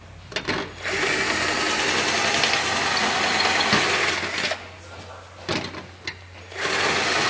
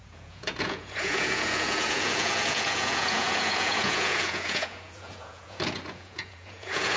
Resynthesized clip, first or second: second